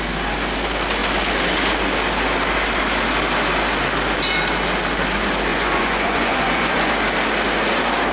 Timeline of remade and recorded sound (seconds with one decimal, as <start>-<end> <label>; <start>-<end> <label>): 0.0-5.5 recorded; 5.5-6.9 remade; 6.9-8.1 recorded